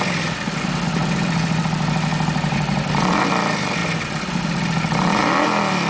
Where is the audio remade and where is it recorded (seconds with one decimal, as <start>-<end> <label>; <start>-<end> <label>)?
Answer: 0.0-5.9 recorded

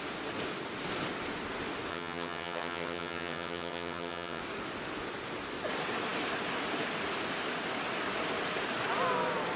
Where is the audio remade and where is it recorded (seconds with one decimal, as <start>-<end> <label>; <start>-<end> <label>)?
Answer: 0.0-1.9 recorded; 1.9-4.4 remade; 4.4-9.6 recorded

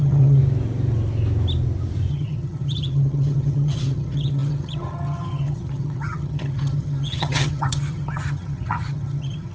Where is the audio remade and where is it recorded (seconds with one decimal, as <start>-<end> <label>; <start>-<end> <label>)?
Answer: 0.0-0.4 remade; 0.4-2.1 recorded; 2.1-9.5 remade